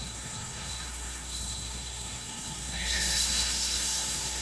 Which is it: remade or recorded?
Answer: remade